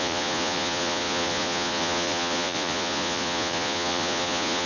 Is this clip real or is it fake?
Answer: fake